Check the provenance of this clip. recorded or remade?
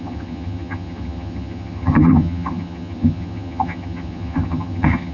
remade